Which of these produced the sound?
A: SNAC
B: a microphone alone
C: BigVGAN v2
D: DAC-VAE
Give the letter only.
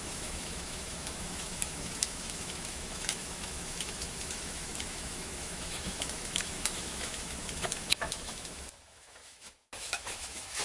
D